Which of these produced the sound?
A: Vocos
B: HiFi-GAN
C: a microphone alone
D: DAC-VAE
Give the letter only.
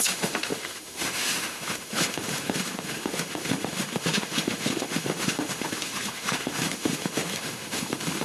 D